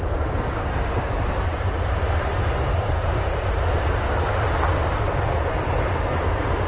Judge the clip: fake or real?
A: fake